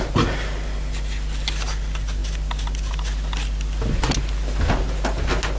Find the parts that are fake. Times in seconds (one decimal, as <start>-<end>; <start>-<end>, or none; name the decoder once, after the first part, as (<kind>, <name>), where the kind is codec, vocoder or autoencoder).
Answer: none